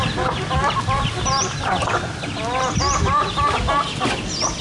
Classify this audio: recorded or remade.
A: recorded